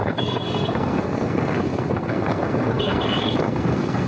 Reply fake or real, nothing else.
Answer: fake